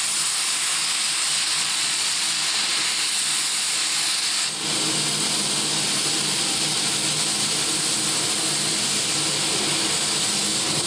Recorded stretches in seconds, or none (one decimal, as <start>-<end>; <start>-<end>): 0.0-1.6; 2.2-10.9

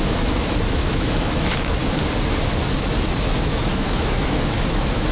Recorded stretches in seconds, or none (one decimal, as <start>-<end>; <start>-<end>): 1.8-3.2

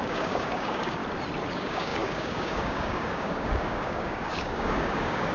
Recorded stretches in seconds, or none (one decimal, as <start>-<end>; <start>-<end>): 1.0-1.5

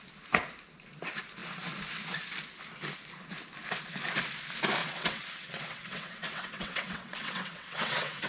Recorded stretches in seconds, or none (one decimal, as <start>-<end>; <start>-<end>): 0.0-4.8

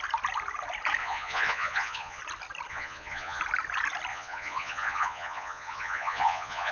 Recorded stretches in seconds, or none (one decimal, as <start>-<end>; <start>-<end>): 0.0-1.0; 2.2-2.7; 3.4-4.1